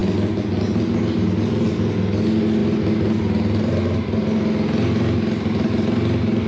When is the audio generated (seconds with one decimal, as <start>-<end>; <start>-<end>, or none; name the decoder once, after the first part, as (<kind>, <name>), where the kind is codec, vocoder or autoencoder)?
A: none